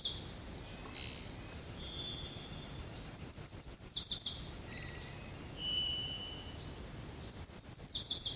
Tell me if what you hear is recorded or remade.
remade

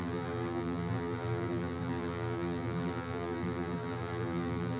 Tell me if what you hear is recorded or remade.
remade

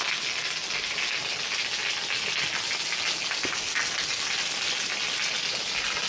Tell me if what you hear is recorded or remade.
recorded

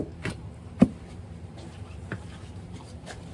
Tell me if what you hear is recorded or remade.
remade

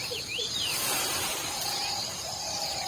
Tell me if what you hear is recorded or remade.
remade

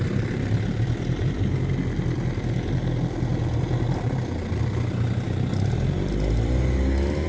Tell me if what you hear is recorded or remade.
remade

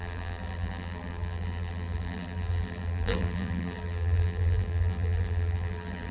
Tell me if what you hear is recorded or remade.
remade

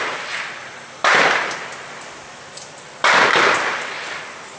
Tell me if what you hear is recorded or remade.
remade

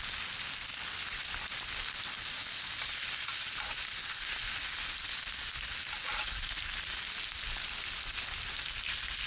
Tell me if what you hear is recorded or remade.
recorded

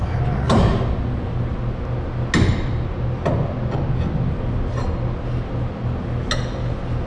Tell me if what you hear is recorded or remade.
recorded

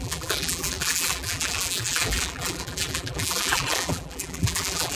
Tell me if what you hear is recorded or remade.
remade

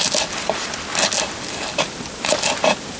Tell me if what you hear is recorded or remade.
recorded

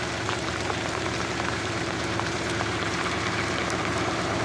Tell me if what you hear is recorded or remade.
remade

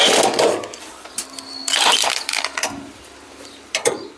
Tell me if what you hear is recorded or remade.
remade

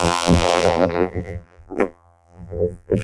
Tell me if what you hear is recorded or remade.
remade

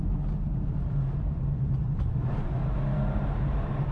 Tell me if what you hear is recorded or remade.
remade